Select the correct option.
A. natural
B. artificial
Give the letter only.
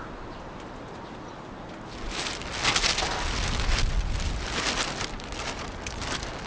A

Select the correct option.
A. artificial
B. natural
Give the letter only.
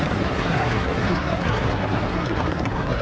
A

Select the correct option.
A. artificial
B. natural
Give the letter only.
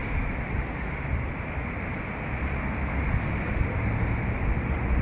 B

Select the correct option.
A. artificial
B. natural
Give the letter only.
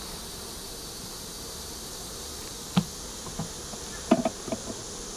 B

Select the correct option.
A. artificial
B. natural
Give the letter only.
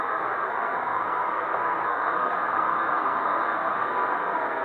A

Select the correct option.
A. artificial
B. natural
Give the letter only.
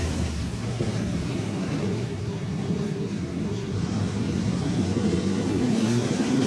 A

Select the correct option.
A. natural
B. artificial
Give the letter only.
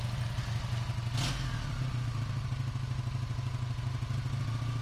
A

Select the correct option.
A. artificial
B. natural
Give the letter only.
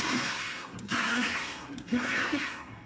A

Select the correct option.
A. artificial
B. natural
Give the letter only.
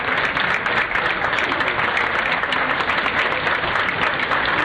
B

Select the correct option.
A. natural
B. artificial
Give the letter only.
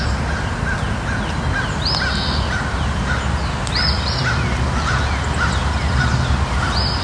A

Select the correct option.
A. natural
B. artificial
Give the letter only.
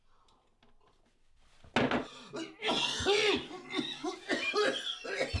A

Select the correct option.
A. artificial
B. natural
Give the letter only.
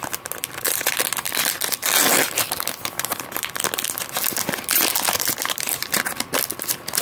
B